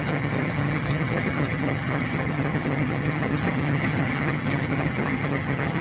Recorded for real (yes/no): no